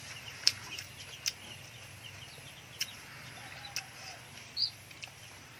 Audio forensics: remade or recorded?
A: recorded